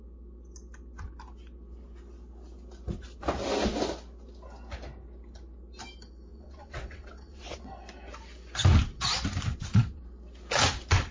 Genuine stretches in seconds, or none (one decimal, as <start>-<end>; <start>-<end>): 0.0-6.3; 7.7-9.5; 10.0-11.1